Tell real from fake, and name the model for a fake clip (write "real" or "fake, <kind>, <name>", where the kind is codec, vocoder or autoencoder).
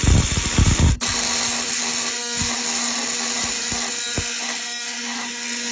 real